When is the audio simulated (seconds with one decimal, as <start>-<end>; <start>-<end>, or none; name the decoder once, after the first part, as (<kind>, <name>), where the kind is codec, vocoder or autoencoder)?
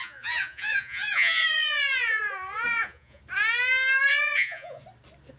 0.0-3.2 (vocoder, Vocos); 4.1-4.8